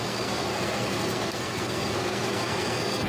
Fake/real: fake